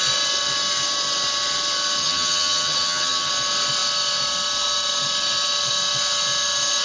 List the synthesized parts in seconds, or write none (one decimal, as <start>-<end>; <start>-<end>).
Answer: 2.0-3.3